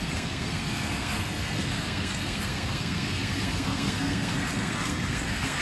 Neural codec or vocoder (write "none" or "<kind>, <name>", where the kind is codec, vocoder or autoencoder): codec, SNAC